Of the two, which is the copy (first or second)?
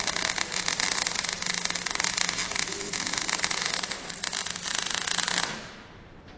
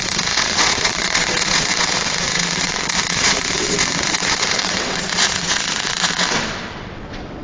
second